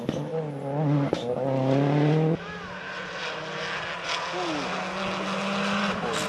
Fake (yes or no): no